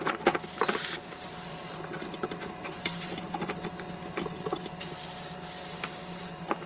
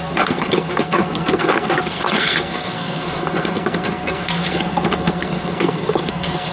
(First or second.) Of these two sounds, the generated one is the second